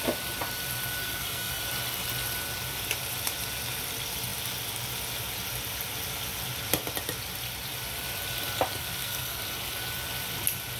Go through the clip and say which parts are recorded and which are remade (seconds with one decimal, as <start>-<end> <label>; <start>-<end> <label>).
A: 0.0-1.0 recorded; 1.0-1.6 remade; 1.6-8.8 recorded; 8.8-9.4 remade; 9.4-10.8 recorded